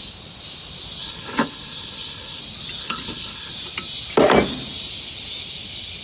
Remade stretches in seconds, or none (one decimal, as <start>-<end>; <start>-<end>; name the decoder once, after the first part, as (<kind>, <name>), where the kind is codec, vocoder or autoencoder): 1.0-2.4 (codec, HILCodec); 2.8-3.5